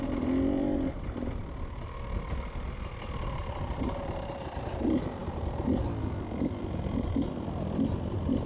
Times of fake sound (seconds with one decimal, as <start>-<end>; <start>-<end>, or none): none